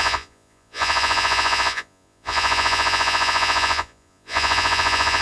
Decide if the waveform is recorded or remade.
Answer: remade